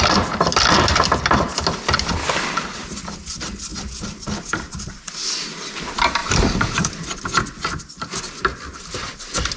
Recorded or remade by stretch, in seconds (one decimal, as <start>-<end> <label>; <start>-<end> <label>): 0.0-3.7 recorded; 3.7-4.9 remade; 4.9-6.2 recorded; 6.2-7.2 remade; 7.2-9.6 recorded